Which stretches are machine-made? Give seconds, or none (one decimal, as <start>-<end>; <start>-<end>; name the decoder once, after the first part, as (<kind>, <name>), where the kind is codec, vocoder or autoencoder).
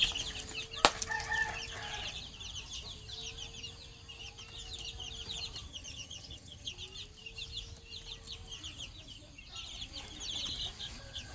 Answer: 5.7-6.7 (vocoder, HiFi-GAN)